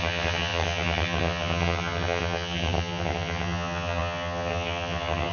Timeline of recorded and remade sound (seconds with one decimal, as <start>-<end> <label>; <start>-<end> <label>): 0.0-5.3 remade